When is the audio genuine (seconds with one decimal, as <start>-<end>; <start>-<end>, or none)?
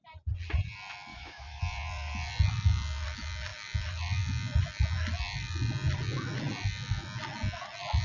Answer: 0.0-1.1; 1.6-8.0